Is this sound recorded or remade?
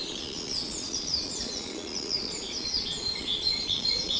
remade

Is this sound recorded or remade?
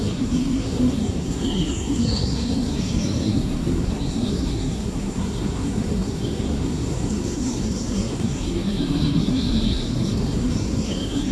remade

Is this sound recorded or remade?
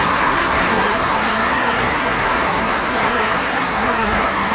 remade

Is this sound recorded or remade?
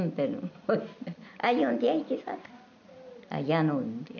recorded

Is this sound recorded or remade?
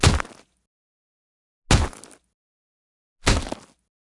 recorded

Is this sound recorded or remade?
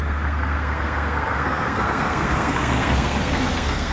remade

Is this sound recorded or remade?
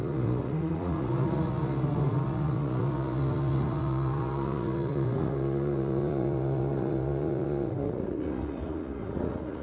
remade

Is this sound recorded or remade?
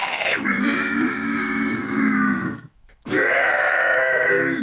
remade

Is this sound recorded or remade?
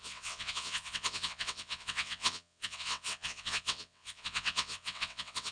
remade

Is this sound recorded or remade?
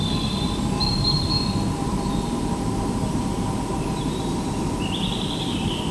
remade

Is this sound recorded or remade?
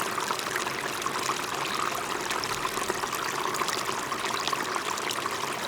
recorded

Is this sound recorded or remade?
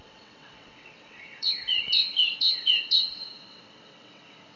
remade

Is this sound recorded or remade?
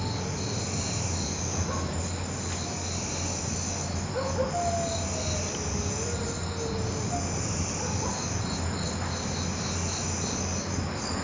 recorded